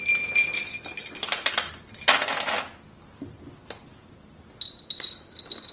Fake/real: real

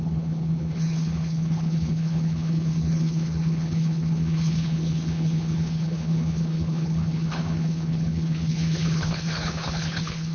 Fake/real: fake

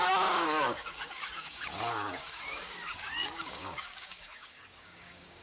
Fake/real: fake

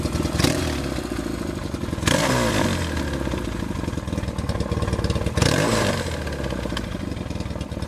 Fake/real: real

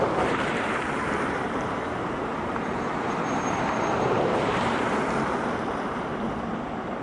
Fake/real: fake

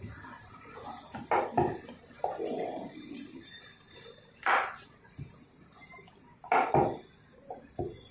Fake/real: real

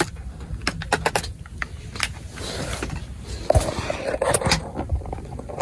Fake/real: real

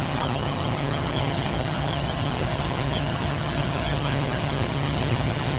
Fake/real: fake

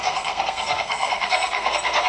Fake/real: fake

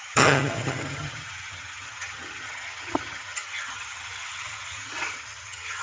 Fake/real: fake